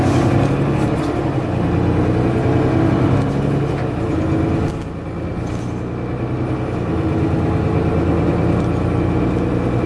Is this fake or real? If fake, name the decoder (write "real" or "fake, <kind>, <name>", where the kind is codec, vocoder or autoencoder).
real